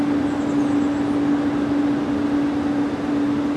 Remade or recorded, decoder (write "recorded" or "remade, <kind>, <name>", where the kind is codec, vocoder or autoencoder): recorded